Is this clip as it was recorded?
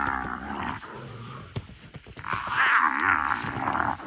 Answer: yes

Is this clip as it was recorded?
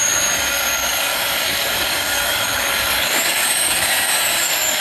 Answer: no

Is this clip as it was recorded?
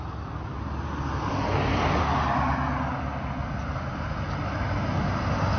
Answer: yes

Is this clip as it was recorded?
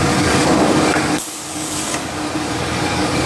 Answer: no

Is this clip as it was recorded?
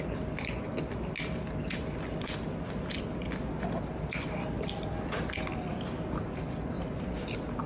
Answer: yes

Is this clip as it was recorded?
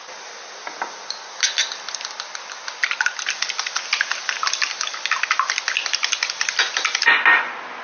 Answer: yes